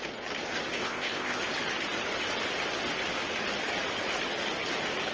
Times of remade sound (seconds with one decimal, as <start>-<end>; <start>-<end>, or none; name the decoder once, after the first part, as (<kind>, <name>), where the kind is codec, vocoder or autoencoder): 0.7-1.4 (codec, ZipCodec)